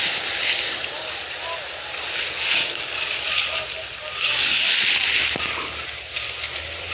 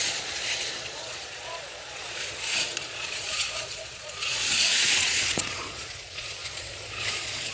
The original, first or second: first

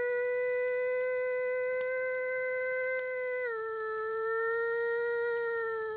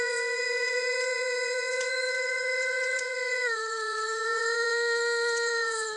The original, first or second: first